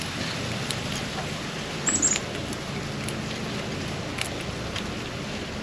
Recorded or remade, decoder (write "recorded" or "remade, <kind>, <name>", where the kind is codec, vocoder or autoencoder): recorded